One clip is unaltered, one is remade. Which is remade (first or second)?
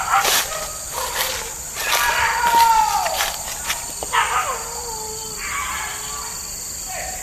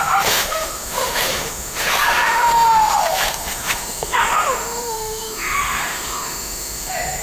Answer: second